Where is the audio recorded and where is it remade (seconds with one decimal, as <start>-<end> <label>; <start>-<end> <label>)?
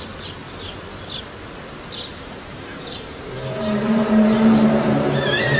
0.0-2.1 recorded; 2.1-5.6 remade